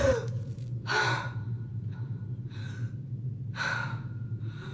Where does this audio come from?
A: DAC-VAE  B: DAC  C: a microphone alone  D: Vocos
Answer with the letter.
C